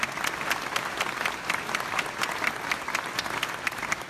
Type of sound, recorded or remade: recorded